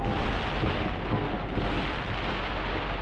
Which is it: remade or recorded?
recorded